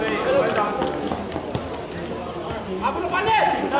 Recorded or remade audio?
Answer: recorded